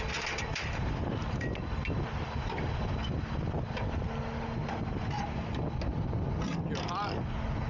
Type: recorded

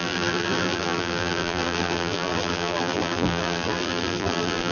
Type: remade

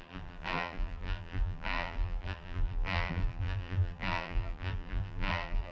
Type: remade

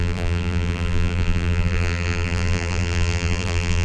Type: remade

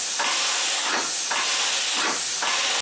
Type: recorded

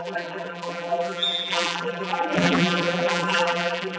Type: remade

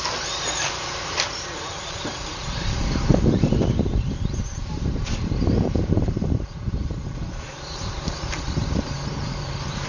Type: remade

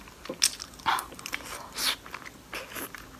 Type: recorded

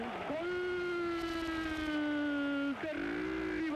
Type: recorded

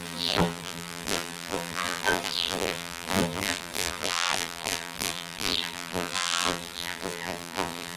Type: remade